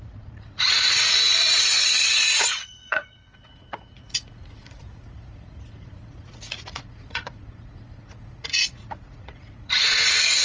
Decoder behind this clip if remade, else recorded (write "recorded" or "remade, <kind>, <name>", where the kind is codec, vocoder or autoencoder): remade, vocoder, Vocos